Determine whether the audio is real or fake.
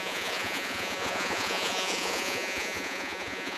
fake